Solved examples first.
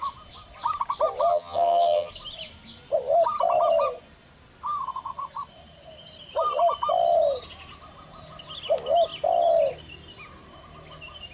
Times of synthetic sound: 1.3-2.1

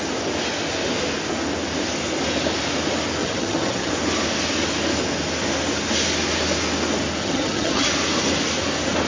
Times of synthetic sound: 3.2-3.9; 7.2-7.9

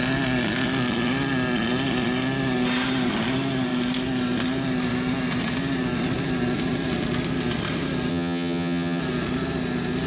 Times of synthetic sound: 8.1-9.0

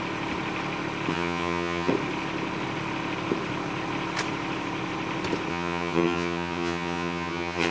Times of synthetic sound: 1.1-1.9; 5.5-7.7

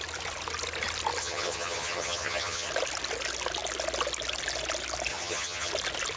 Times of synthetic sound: 1.2-2.7; 5.1-5.7